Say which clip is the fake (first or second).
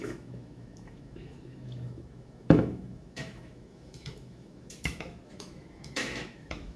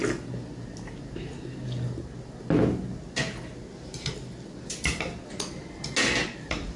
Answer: first